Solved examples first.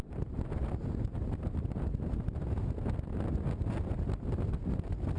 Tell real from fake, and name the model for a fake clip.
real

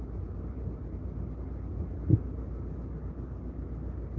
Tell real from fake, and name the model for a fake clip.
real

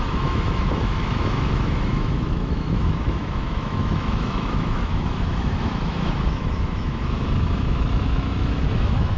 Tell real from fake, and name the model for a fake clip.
fake, autoencoder, DAC-VAE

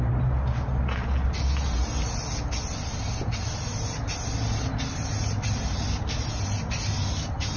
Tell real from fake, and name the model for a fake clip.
real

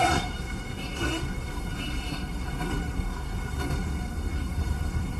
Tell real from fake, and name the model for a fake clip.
fake, codec, SNAC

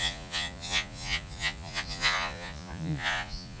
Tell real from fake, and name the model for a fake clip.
fake, vocoder, Vocos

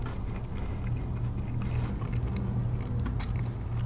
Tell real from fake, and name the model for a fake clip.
real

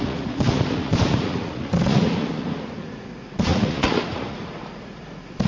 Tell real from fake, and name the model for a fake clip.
fake, vocoder, Vocos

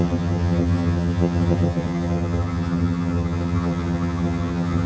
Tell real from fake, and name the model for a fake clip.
fake, vocoder, HiFi-GAN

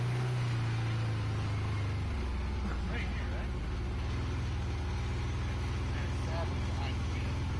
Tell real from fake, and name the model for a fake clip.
real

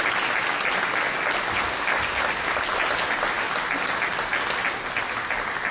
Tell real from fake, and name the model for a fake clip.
real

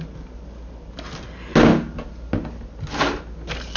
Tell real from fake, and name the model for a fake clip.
real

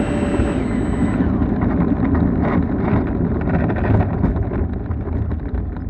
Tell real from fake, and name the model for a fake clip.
real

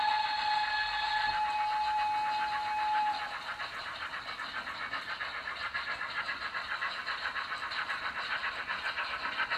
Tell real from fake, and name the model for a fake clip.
real